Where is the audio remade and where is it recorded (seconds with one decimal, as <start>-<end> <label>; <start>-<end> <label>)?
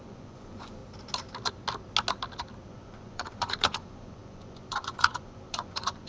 0.0-0.8 remade; 0.8-2.7 recorded; 2.7-6.1 remade